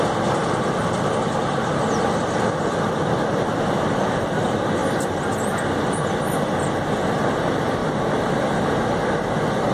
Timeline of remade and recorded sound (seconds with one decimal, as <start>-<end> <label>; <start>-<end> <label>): 0.0-9.7 recorded